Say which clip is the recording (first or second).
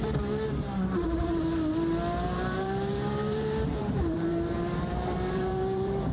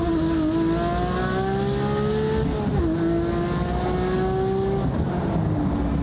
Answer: second